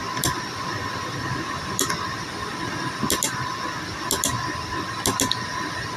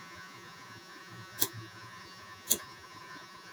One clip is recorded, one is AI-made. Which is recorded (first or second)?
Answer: first